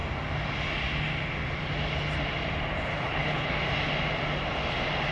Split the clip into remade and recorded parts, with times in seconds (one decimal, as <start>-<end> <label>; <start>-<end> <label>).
0.0-2.9 recorded; 2.9-3.5 remade; 3.5-5.1 recorded